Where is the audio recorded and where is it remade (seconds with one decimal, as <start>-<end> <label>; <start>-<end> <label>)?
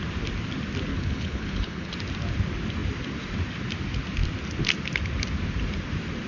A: 0.0-0.9 recorded; 0.9-1.9 remade; 1.9-6.3 recorded